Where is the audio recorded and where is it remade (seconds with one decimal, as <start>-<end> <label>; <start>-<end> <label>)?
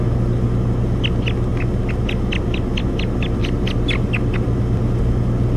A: 0.0-5.6 recorded